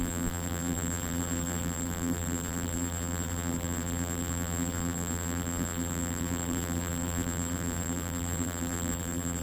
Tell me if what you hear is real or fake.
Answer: fake